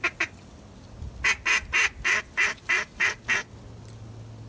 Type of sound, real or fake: real